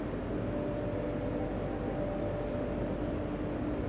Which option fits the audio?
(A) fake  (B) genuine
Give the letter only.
B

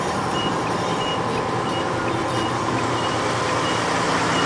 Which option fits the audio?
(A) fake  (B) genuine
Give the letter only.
B